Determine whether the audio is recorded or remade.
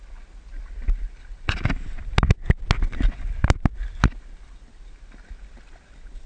recorded